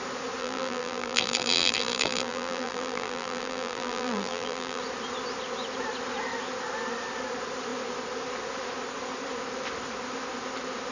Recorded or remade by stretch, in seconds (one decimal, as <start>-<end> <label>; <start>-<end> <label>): 0.0-0.4 recorded; 0.4-4.8 remade; 4.8-10.9 recorded